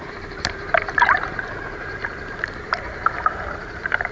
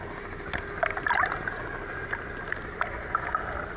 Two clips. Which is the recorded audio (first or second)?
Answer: second